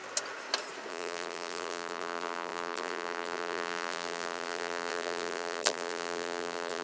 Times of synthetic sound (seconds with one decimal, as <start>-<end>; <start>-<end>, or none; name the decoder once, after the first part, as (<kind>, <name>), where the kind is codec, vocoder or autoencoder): 0.9-6.8 (vocoder, BigVGAN v2)